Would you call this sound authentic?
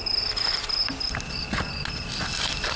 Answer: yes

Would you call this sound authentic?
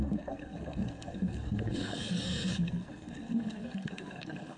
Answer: no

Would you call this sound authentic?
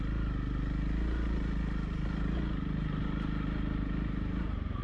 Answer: yes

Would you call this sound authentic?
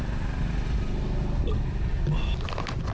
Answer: yes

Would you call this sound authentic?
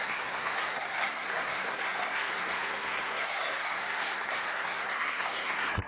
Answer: no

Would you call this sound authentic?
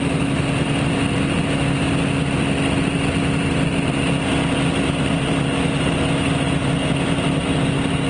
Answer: yes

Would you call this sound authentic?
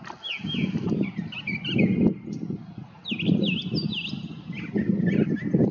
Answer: yes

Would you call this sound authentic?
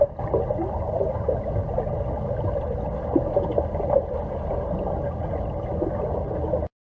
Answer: yes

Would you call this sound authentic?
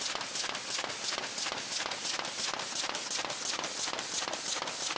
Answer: yes